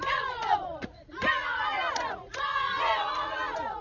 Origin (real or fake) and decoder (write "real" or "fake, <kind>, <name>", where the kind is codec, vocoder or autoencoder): fake, vocoder, Vocos